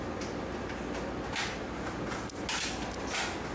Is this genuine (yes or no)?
yes